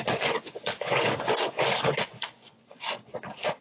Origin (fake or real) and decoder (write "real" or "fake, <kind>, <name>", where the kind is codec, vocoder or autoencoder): fake, vocoder, Vocos